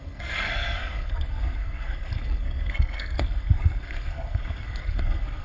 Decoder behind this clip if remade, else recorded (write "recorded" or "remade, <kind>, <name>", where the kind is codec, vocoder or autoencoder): remade, codec, SNAC